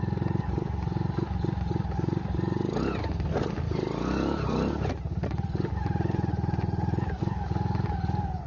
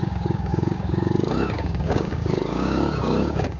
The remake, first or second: second